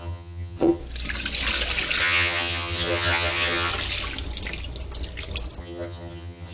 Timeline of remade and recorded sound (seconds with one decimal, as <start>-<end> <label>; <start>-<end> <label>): 0.0-0.8 remade; 0.8-2.0 recorded; 2.0-3.7 remade; 3.7-5.6 recorded; 5.6-6.5 remade